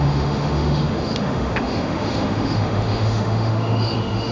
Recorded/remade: remade